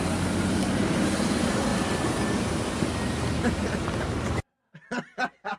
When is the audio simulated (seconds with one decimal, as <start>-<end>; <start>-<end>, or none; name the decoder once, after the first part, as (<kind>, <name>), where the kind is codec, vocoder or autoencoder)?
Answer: none